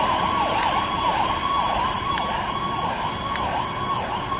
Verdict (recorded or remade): recorded